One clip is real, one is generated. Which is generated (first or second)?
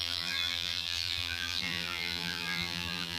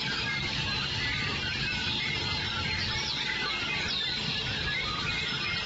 first